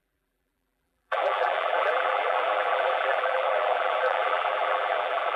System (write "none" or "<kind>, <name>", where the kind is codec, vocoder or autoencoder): vocoder, BigVGAN v2